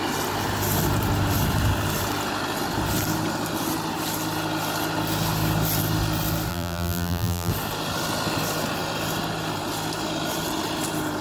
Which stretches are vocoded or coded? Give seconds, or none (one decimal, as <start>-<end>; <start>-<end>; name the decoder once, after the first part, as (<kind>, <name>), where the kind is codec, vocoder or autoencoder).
6.5-7.5 (vocoder, BigVGAN v2)